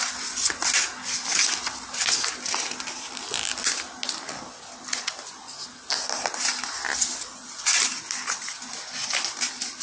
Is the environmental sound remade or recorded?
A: recorded